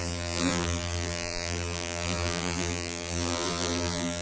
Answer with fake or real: fake